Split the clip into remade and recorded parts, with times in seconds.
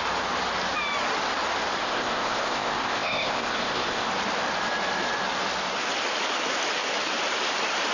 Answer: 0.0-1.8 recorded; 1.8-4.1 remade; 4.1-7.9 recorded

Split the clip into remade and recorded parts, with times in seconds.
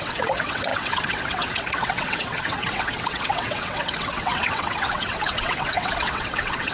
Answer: 0.0-6.7 remade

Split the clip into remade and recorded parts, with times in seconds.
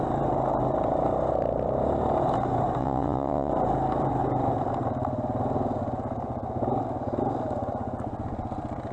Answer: 0.0-2.8 recorded; 2.8-3.5 remade; 3.5-8.9 recorded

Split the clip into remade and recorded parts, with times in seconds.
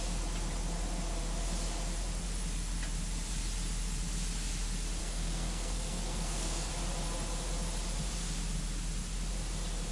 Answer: 0.0-5.0 recorded; 5.0-6.7 remade; 6.7-9.9 recorded